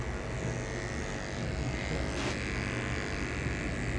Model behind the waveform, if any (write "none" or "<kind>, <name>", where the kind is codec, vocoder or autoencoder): none